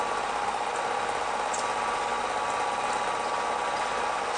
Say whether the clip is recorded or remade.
recorded